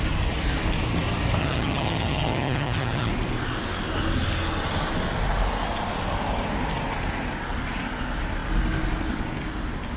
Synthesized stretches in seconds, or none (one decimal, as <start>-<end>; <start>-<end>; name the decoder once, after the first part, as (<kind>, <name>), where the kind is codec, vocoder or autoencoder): 1.4-3.1 (vocoder, HiFi-GAN)